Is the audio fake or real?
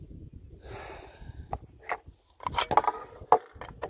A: real